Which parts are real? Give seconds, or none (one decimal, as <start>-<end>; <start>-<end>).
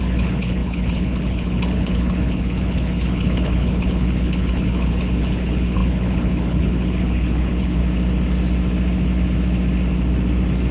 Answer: 7.8-10.7